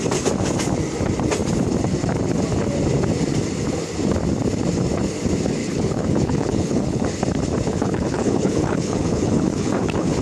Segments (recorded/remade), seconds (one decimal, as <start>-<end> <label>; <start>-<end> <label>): 0.0-5.6 recorded; 5.6-7.0 remade; 7.0-7.7 recorded; 7.7-10.2 remade